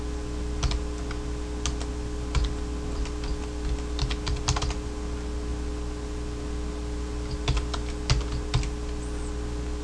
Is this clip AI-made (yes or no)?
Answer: no